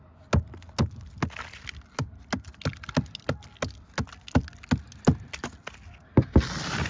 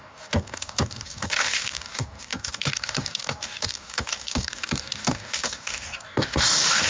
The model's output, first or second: second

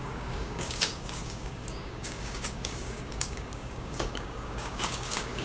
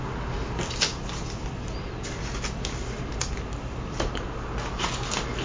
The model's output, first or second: first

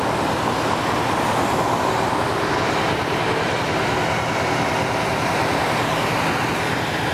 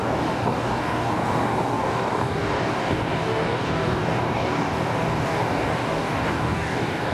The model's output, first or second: second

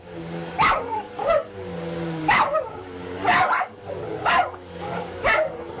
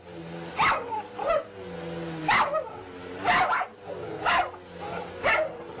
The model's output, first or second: first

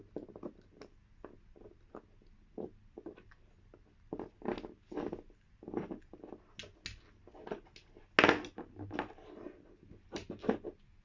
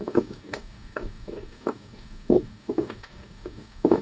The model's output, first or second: second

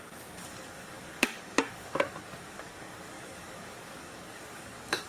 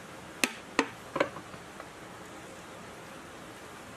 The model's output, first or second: first